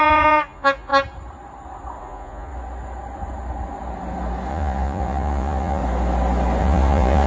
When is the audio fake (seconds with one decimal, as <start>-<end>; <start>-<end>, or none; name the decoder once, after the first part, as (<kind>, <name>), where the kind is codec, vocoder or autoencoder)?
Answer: 0.0-0.9 (vocoder, Vocos); 2.0-2.5; 4.5-5.8; 6.6-7.3